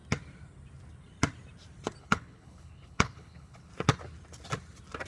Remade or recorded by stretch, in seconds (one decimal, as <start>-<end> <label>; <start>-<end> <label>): 0.0-2.0 recorded; 2.0-3.7 remade; 3.7-5.1 recorded